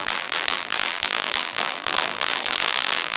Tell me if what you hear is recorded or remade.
remade